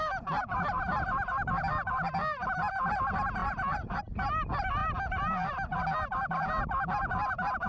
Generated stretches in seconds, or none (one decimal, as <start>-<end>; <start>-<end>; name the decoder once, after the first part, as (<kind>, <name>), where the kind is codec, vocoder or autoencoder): 3.4-4.0 (vocoder, BigVGAN v2)